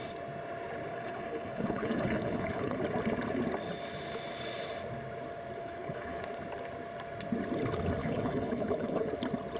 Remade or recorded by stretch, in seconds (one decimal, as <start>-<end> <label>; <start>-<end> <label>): 0.0-0.9 recorded; 0.9-2.8 remade; 2.8-5.6 recorded; 5.6-6.2 remade; 6.2-8.0 recorded; 8.0-9.1 remade; 9.1-9.6 recorded